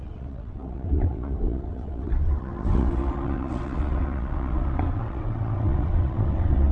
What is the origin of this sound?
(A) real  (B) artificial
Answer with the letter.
B